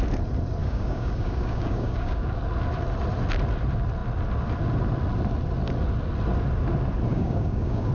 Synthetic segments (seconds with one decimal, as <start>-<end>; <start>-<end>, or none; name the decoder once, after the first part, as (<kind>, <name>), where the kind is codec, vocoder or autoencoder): 0.6-2.4 (codec, DAC); 7.1-7.9